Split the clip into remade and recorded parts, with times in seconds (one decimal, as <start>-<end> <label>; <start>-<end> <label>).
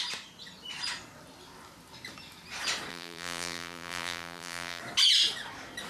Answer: 0.0-2.9 recorded; 2.9-4.8 remade; 4.8-5.9 recorded